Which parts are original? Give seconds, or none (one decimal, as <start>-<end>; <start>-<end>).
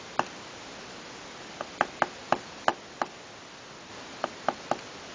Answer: 0.0-5.1